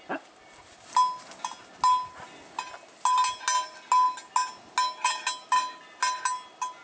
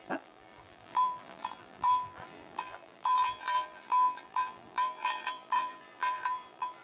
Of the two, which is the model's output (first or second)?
second